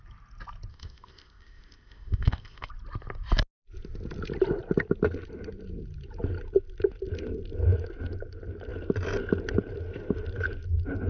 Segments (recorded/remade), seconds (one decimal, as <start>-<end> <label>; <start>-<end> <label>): 0.0-0.7 recorded; 0.7-2.7 remade; 2.7-11.1 recorded